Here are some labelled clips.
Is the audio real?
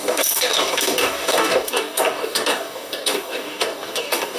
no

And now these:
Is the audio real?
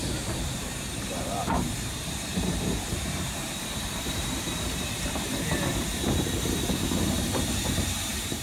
no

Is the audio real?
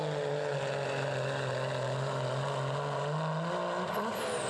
yes